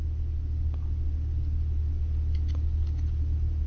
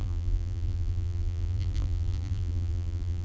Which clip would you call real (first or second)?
first